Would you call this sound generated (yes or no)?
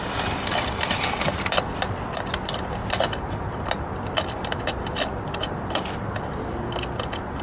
yes